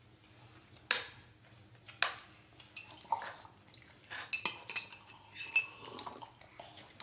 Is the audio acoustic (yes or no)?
yes